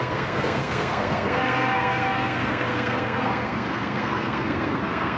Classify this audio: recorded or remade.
remade